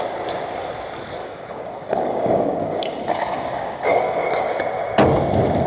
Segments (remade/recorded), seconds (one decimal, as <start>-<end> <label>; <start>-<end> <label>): 0.0-1.2 recorded; 1.2-4.6 remade; 4.6-5.7 recorded